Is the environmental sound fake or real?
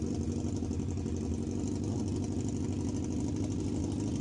real